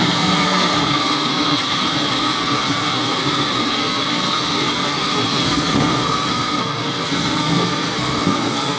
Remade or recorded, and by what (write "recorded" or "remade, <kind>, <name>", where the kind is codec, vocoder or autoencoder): remade, codec, SNAC